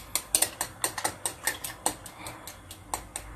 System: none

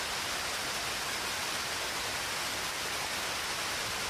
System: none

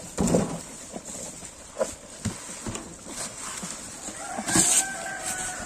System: none